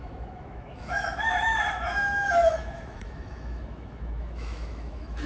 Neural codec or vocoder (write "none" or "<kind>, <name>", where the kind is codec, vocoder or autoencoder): autoencoder, DAC-VAE